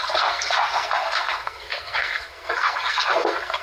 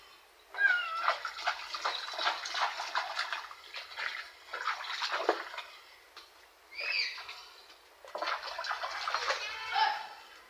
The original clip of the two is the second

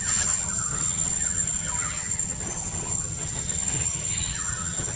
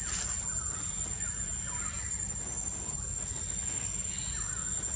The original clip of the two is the second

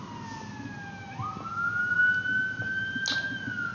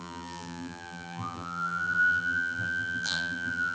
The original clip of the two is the first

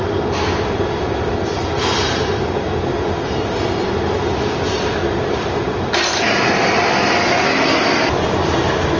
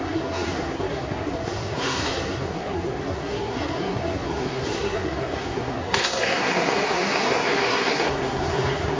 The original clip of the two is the first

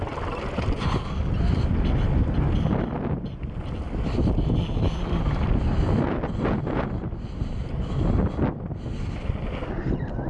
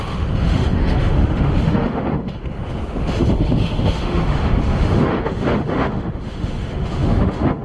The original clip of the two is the first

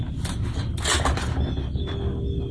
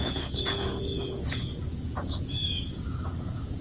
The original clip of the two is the first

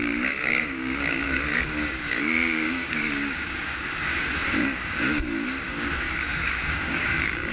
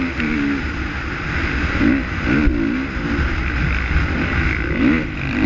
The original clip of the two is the second